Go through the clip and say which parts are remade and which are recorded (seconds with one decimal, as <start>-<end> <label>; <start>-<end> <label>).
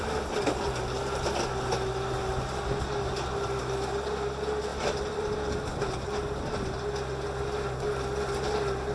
0.0-4.7 recorded; 4.7-5.3 remade; 5.3-8.9 recorded